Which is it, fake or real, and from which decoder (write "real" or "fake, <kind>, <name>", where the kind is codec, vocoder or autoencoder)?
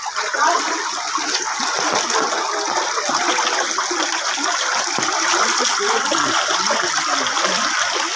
fake, vocoder, BigVGAN v2